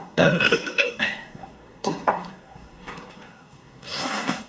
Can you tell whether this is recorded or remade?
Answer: remade